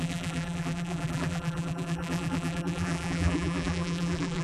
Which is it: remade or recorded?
remade